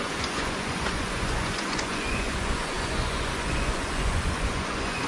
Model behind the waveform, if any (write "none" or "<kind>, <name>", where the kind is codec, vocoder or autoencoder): vocoder, Vocos